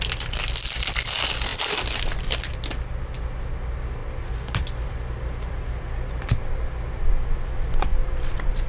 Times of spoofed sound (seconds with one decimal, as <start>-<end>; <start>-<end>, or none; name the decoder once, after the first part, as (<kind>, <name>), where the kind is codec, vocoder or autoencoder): none